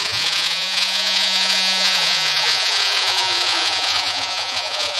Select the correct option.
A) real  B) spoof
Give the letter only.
B